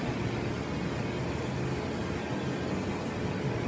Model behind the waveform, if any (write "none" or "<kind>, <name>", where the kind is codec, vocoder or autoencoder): none